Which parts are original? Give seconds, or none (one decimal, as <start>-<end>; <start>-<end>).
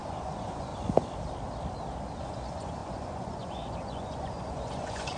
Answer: 0.7-2.2